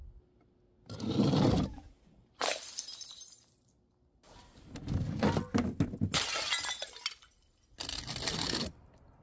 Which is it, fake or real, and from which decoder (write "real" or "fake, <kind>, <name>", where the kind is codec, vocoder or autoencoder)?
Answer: real